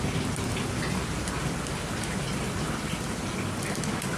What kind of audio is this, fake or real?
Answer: real